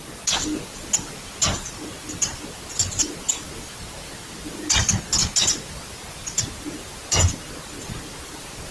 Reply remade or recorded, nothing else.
recorded